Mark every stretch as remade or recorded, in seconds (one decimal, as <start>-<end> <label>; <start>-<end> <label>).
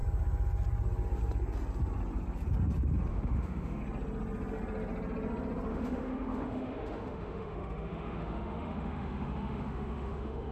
0.0-3.1 recorded; 3.1-3.8 remade; 3.8-5.7 recorded; 5.7-10.5 remade